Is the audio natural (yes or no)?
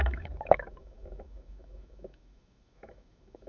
no